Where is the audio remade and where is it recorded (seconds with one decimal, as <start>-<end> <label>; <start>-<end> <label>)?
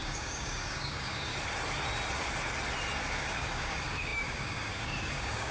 0.0-1.3 remade; 1.3-3.1 recorded; 3.1-5.5 remade